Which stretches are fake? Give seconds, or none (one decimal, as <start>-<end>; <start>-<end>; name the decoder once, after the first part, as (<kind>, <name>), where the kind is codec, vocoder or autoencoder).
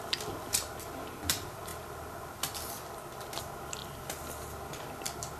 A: none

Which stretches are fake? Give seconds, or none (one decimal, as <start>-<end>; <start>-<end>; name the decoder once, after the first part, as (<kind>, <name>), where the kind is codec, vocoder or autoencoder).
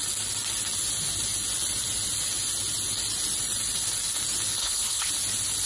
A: 4.6-5.1 (codec, HILCodec)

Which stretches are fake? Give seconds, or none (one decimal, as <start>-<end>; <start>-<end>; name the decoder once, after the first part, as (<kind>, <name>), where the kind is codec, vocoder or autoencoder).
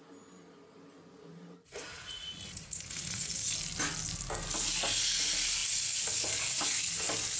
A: 1.6-3.3 (vocoder, Vocos)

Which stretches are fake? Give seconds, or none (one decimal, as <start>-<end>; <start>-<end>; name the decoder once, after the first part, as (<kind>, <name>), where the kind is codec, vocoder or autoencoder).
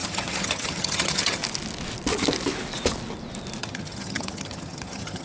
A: 0.0-1.4 (vocoder, HiFi-GAN); 3.6-5.2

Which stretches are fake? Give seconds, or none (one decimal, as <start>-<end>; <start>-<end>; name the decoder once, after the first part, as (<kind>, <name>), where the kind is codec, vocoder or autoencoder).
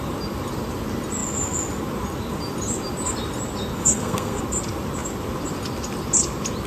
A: 3.8-4.4 (codec, SNAC)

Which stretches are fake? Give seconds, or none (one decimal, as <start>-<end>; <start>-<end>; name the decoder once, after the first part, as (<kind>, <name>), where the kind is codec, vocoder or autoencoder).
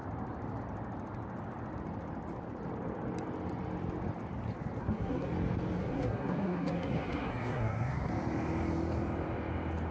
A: 4.8-5.3 (codec, SNAC); 5.8-8.1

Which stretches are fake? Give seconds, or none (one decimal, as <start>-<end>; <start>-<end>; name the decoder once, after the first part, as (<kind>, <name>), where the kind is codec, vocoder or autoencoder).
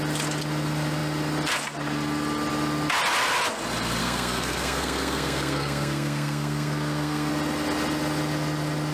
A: 4.0-7.3 (codec, SNAC)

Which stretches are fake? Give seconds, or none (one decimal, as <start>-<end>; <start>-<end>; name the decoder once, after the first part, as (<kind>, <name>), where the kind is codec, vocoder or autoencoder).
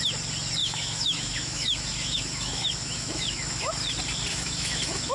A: 0.6-3.7 (autoencoder, DAC-VAE); 4.3-5.1